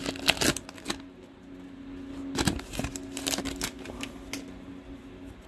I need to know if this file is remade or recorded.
recorded